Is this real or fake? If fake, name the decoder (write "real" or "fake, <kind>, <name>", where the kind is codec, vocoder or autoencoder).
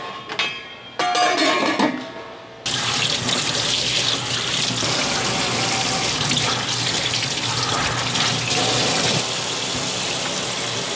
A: real